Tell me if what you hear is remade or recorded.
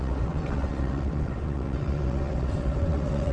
remade